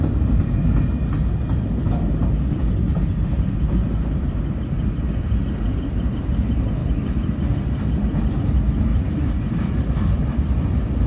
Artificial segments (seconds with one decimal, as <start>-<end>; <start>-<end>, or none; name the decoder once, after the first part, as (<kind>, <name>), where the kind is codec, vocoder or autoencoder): 8.9-10.2 (vocoder, BigVGAN v2)